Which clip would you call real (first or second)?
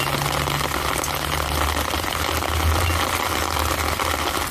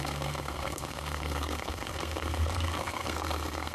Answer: first